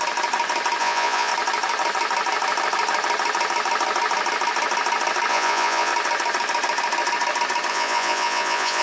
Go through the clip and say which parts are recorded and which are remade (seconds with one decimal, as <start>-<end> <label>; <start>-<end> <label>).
0.0-0.8 recorded; 0.8-1.3 remade; 1.3-5.3 recorded; 5.3-5.9 remade; 5.9-7.7 recorded; 7.7-8.8 remade